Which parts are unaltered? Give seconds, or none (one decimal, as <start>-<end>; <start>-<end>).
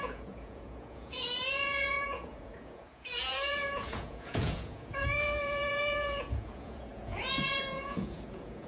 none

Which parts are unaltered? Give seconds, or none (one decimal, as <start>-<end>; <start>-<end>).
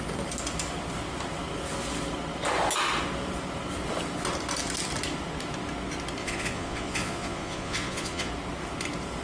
0.0-6.2; 8.3-9.2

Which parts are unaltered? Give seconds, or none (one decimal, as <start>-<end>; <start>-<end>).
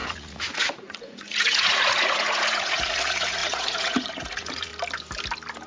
4.7-5.7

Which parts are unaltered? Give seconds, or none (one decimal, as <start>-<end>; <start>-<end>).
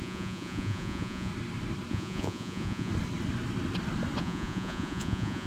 1.3-1.9; 2.9-4.2